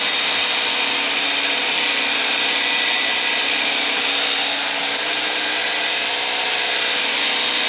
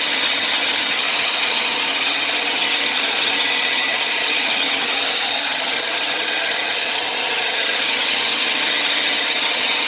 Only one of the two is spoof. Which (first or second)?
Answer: second